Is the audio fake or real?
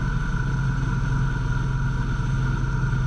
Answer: real